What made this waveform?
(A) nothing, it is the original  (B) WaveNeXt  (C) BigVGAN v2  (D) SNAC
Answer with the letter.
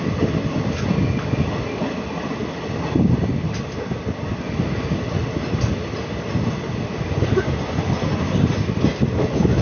A